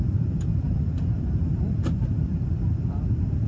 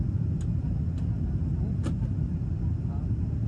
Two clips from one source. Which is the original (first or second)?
second